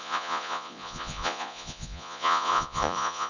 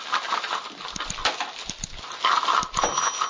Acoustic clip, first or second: second